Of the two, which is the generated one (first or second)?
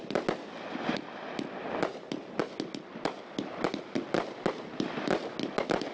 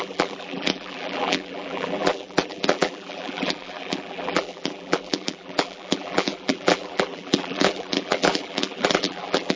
second